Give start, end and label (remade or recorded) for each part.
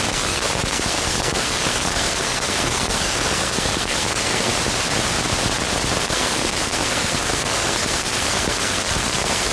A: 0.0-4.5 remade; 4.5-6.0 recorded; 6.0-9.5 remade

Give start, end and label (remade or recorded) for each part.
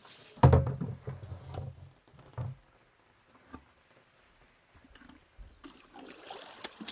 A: 0.0-6.9 recorded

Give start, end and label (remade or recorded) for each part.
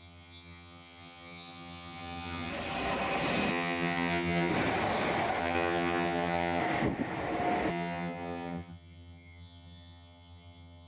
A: 0.0-2.5 remade; 2.5-3.5 recorded; 3.5-4.5 remade; 4.5-5.4 recorded; 5.4-6.6 remade; 6.6-7.7 recorded; 7.7-10.9 remade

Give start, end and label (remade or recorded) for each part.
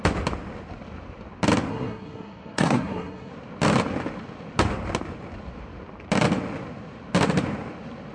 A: 0.0-1.7 recorded; 1.7-3.3 remade; 3.3-8.1 recorded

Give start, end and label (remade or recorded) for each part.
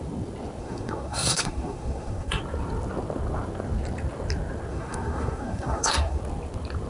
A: 0.0-0.6 recorded; 0.6-2.4 remade; 2.4-4.7 recorded; 4.7-6.2 remade; 6.2-6.9 recorded